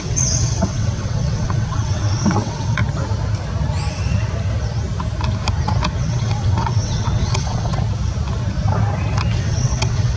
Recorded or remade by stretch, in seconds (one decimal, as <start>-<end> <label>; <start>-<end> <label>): 0.0-2.8 remade; 2.8-6.0 recorded; 6.0-7.7 remade; 7.7-9.4 recorded; 9.4-10.2 remade